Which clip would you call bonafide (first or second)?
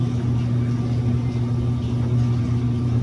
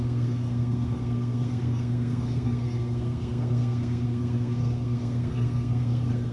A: first